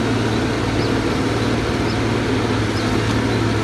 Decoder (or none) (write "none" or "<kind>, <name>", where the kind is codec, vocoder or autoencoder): none